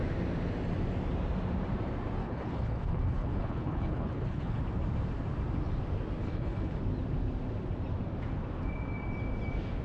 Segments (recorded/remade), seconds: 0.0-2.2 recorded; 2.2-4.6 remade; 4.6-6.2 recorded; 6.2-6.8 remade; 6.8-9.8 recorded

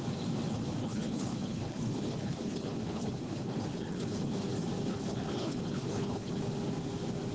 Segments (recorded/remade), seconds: 0.0-0.8 recorded; 0.8-4.3 remade; 4.3-4.9 recorded; 4.9-6.3 remade; 6.3-7.3 recorded

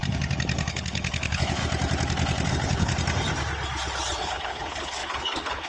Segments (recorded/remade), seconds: 0.0-0.7 recorded; 0.7-1.6 remade; 1.6-2.5 recorded; 2.5-2.9 remade; 2.9-4.2 recorded; 4.2-5.7 remade

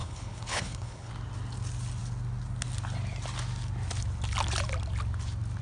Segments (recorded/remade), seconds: 0.0-1.1 remade; 1.1-5.6 recorded

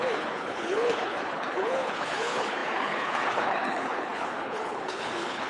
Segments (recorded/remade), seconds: 0.0-5.5 remade

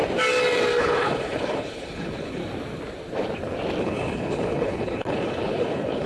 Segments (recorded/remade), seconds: 0.0-0.8 recorded; 0.8-2.4 remade; 2.4-3.8 recorded; 3.8-6.1 remade